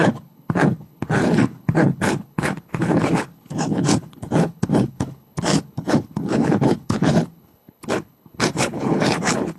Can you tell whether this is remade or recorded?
remade